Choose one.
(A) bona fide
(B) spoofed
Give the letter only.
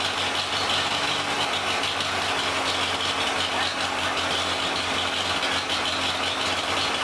A